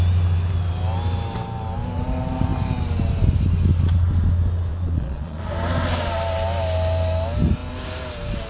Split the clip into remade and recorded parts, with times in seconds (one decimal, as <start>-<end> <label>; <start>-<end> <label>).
0.0-4.7 recorded; 4.7-5.4 remade; 5.4-8.5 recorded